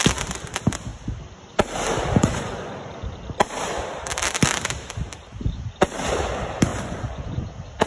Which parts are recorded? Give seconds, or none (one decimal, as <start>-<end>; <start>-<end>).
0.0-2.2; 2.9-6.7; 7.5-7.9